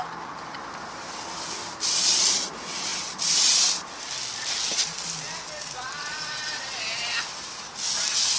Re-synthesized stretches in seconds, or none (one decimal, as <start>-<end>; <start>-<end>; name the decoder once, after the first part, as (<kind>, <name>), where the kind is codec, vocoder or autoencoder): none